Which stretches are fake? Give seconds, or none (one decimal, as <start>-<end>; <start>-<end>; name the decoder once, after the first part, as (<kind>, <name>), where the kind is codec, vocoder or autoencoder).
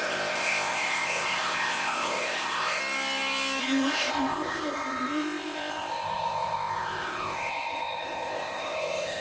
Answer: 0.0-2.8 (codec, ZipCodec); 3.6-9.2